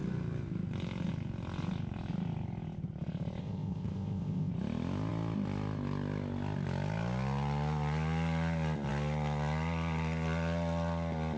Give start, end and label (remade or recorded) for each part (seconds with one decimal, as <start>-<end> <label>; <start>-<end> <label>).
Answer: 0.0-3.4 recorded; 3.4-4.5 remade; 4.5-11.4 recorded